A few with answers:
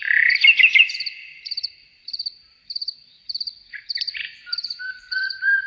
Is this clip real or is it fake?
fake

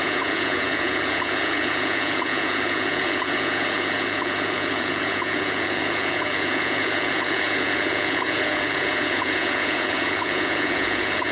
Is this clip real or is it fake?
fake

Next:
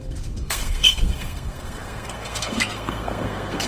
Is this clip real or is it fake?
fake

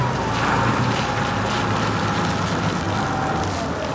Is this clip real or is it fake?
real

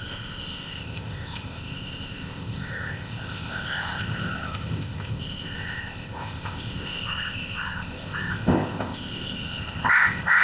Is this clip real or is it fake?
fake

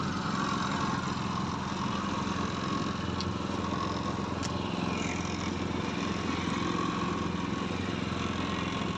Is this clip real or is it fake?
real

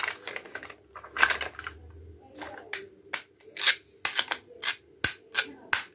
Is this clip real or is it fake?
real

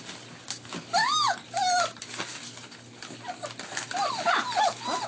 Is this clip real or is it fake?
real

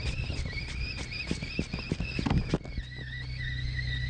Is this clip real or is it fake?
real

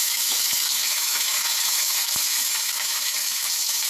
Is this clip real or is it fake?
fake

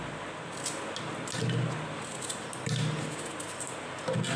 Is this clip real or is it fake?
real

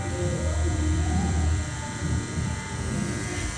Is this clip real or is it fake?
fake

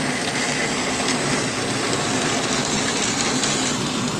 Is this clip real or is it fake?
real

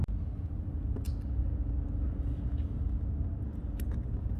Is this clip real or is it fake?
real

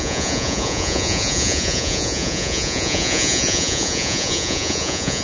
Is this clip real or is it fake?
fake